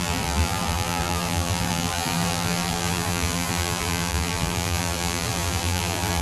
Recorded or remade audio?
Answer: remade